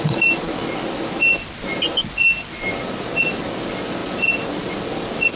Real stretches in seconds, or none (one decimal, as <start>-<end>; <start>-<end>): 0.0-5.4